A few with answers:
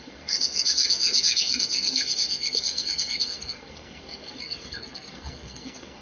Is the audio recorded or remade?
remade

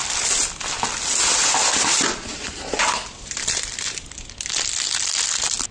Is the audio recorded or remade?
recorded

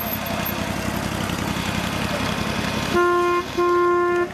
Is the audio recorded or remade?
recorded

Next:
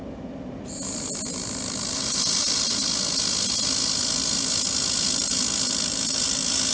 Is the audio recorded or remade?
recorded